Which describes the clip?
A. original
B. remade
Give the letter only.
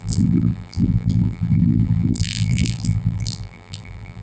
B